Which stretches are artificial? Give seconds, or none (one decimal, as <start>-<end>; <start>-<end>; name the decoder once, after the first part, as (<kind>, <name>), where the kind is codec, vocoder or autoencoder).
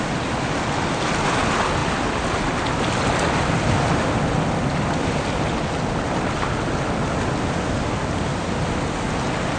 none